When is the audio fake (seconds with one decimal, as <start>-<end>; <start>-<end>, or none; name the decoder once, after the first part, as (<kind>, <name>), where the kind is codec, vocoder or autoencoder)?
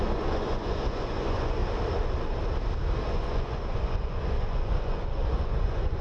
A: 0.0-1.6 (vocoder, Vocos); 3.1-6.0